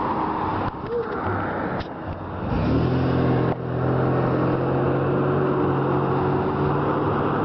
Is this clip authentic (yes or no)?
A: yes